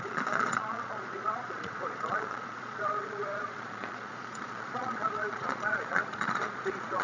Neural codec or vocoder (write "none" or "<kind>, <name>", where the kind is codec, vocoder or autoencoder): vocoder, Vocos